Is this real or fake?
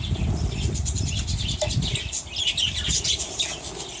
real